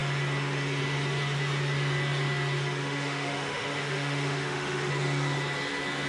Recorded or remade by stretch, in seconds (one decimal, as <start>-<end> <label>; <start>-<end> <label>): 0.0-2.8 recorded; 2.8-4.9 remade; 4.9-6.1 recorded

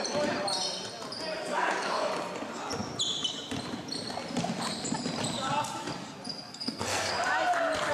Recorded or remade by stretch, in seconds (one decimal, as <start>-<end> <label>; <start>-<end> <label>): 0.0-1.5 recorded; 1.5-2.1 remade; 2.1-6.5 recorded; 6.5-7.1 remade; 7.1-7.9 recorded

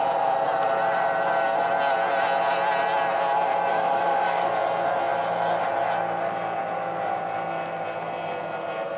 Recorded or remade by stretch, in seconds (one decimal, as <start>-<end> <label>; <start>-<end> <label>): 0.0-3.7 recorded; 3.7-4.5 remade; 4.5-9.0 recorded

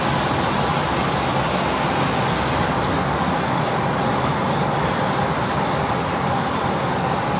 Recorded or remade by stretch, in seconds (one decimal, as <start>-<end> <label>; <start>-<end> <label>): 0.0-7.4 recorded